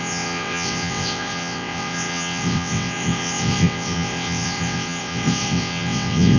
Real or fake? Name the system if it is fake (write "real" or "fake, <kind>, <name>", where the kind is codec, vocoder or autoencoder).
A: fake, vocoder, WaveNeXt